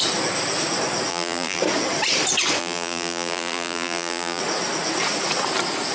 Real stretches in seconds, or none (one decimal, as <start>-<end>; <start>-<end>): 0.0-1.1; 1.6-2.6; 4.4-5.9